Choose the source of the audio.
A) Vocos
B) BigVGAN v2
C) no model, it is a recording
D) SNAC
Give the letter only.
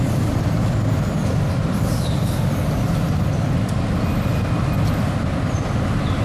C